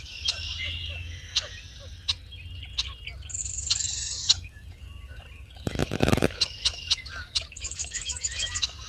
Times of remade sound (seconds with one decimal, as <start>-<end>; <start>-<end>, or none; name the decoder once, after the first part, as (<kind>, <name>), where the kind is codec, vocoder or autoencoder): 0.0-1.5 (codec, DAC); 3.4-8.9